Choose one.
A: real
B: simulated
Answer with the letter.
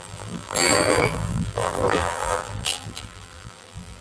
B